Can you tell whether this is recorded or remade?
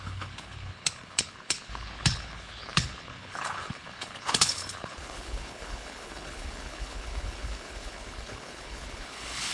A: remade